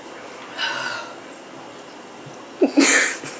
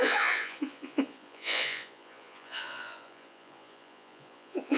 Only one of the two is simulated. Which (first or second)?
second